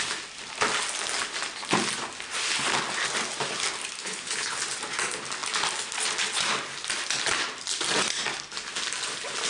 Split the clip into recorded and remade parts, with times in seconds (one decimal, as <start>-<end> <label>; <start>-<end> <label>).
0.0-4.0 recorded; 4.0-4.6 remade; 4.6-9.5 recorded